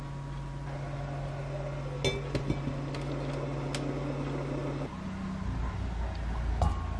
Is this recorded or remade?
recorded